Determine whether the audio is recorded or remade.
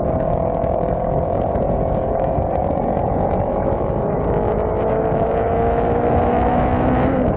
remade